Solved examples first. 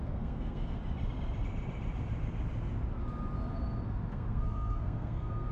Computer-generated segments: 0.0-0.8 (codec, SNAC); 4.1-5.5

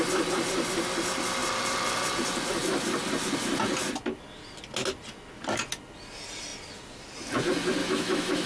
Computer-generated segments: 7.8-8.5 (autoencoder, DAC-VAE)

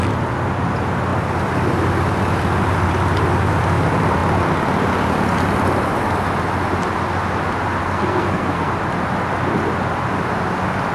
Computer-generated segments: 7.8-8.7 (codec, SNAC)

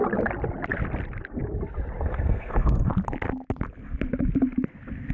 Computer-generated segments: 2.1-2.9 (codec, SNAC)

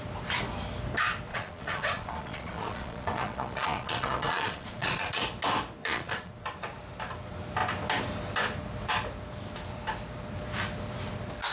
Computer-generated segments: 1.3-5.2 (vocoder, Vocos); 5.8-6.3

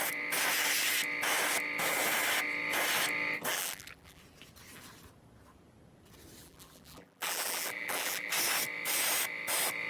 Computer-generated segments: 3.5-4.2 (vocoder, BigVGAN v2); 6.4-8.3

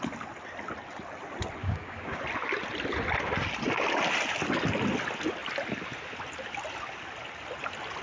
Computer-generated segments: 1.6-2.2 (codec, DAC)

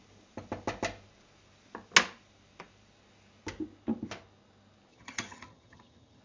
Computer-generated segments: 4.9-6.2 (vocoder, HiFi-GAN)